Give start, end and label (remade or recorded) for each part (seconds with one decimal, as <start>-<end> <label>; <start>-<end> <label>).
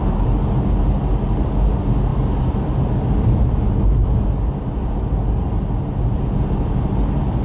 0.0-7.4 recorded